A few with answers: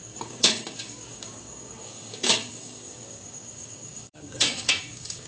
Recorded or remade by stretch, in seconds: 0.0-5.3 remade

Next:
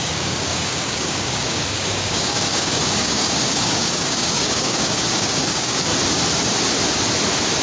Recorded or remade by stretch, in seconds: 0.0-5.9 remade; 5.9-7.6 recorded

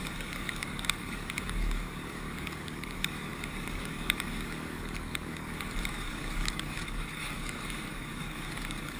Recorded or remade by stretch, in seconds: 0.0-9.0 remade

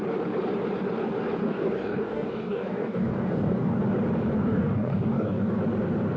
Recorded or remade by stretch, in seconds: 0.0-1.4 recorded; 1.4-3.8 remade; 3.8-4.4 recorded; 4.4-5.6 remade; 5.6-6.2 recorded

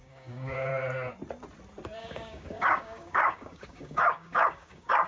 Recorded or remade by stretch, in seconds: 0.0-0.7 remade; 0.7-2.0 recorded; 2.0-5.1 remade